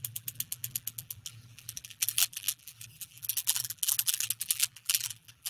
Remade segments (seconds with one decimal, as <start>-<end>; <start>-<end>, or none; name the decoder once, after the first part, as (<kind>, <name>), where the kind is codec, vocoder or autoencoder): 0.0-5.5 (vocoder, BigVGAN v2)